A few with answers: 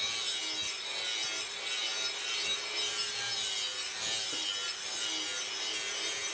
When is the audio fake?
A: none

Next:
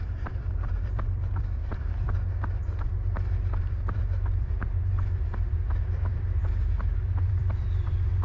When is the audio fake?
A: 0.0-6.4; 7.3-8.2